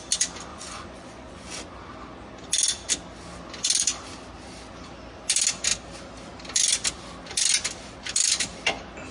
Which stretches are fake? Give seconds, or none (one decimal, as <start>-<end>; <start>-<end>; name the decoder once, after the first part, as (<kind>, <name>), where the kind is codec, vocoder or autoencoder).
0.5-1.6 (vocoder, Vocos)